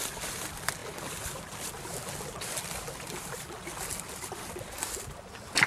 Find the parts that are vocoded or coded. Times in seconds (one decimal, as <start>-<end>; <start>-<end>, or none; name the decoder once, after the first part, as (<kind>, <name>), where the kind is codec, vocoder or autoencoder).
none